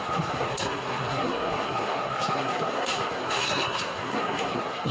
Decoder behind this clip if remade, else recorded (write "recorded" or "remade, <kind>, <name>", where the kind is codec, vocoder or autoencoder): remade, codec, SNAC